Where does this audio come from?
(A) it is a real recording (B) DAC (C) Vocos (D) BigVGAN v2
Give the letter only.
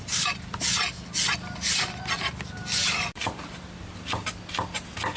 A